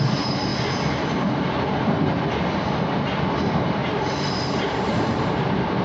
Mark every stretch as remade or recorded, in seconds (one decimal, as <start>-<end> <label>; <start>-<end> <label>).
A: 0.0-0.5 remade; 0.5-3.4 recorded; 3.4-5.8 remade